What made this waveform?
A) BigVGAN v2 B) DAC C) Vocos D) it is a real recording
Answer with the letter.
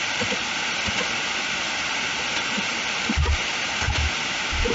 A